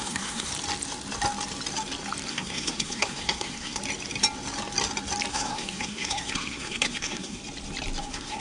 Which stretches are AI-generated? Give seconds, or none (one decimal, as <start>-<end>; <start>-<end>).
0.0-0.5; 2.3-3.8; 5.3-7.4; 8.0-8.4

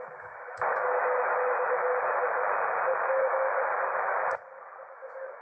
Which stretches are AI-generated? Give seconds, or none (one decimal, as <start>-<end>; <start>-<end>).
0.0-2.2; 3.0-4.3; 4.9-5.4

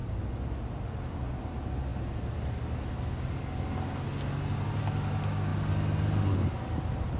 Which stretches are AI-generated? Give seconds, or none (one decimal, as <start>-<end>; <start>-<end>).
none

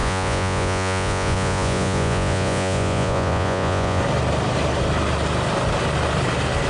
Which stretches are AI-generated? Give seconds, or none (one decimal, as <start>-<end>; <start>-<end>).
0.0-4.0

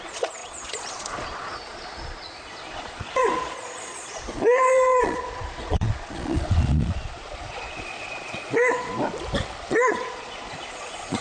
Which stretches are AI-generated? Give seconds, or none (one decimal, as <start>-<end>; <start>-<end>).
0.0-8.9; 9.6-11.2

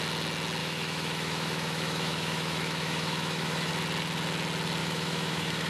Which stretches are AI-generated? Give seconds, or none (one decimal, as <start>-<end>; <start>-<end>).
0.6-3.7; 4.8-5.7

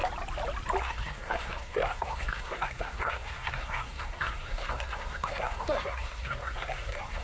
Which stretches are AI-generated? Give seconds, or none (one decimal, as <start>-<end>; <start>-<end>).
0.8-7.2

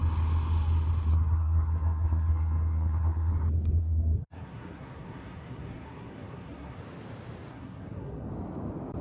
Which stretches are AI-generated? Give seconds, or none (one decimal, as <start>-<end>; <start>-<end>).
1.1-3.3; 3.8-6.8; 7.5-8.3